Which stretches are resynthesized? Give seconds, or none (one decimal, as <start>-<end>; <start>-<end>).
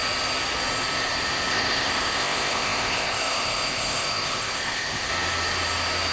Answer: 1.5-5.1